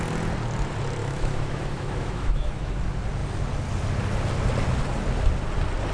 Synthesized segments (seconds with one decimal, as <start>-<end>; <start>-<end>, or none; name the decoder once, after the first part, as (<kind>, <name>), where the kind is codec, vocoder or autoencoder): 1.0-2.8 (autoencoder, DAC-VAE)